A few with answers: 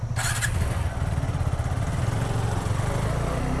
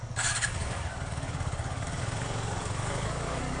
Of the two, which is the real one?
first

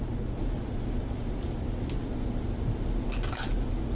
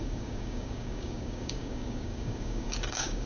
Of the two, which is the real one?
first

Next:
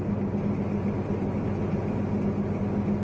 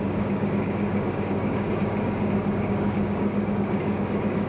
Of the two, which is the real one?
first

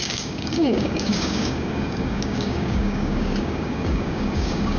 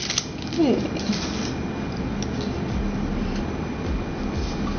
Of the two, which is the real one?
second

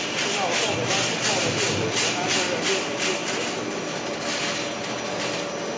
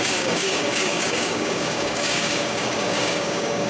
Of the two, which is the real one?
first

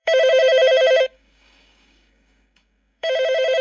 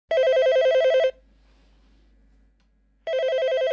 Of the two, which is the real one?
second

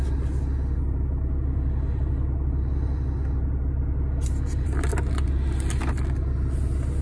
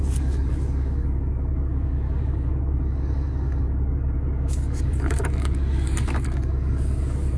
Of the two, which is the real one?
first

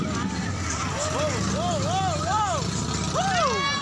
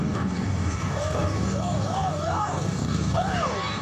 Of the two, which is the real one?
first